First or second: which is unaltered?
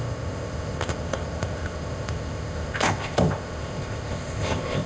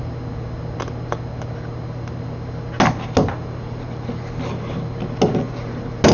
second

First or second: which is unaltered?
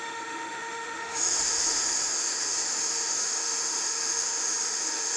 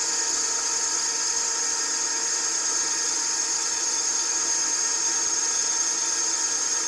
second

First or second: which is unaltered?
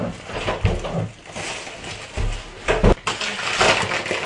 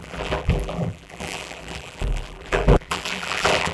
first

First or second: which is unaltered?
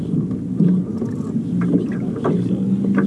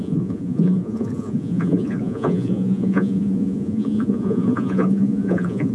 first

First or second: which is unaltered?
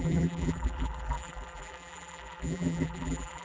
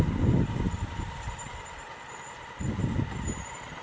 second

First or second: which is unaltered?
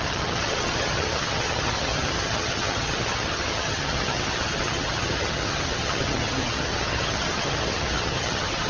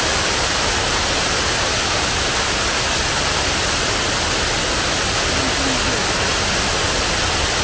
second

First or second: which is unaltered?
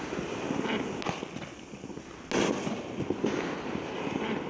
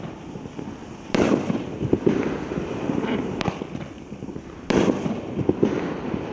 first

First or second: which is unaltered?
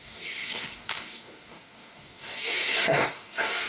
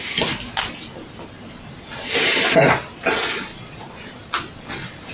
second